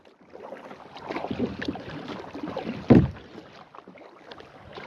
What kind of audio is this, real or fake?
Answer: real